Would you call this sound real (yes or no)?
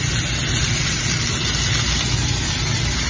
yes